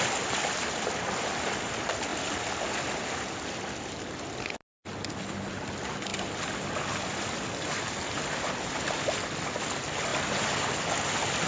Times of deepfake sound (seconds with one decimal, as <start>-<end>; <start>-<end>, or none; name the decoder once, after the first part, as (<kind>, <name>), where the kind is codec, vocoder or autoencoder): none